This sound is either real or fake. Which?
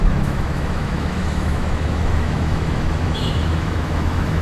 fake